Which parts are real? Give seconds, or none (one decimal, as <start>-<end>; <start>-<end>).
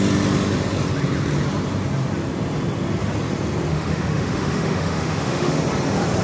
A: 0.0-3.7; 5.6-6.2